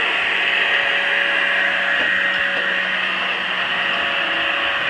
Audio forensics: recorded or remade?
recorded